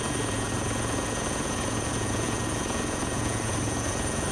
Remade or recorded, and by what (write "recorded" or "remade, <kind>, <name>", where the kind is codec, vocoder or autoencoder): remade, vocoder, Vocos